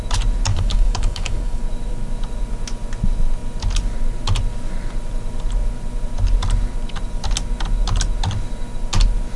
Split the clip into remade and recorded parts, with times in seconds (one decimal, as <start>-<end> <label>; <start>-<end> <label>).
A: 0.0-0.5 recorded; 0.5-1.6 remade; 1.6-9.4 recorded